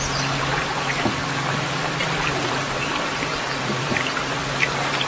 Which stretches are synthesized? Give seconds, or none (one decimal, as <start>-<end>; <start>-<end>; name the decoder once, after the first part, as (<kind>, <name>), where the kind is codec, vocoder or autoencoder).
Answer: 2.0-5.1 (vocoder, BigVGAN v2)